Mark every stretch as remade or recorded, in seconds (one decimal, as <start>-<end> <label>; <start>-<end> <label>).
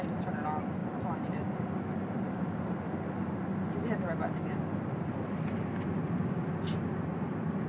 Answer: 0.0-7.7 recorded